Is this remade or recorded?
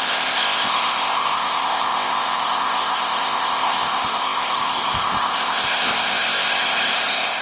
remade